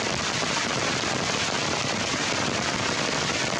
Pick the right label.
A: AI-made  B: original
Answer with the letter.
A